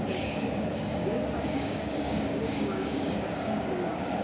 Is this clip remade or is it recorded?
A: remade